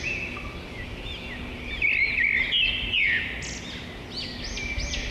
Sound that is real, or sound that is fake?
real